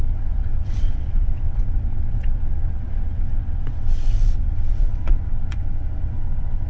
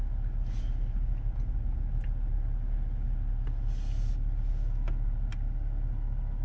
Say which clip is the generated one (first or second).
first